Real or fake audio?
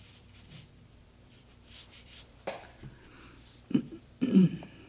fake